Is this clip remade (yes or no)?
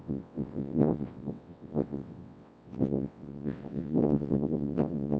yes